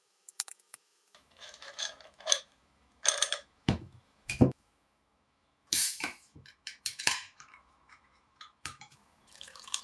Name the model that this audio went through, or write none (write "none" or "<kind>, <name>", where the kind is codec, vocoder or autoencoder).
autoencoder, DAC-VAE